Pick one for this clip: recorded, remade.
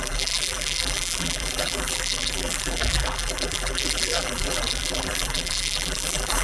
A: remade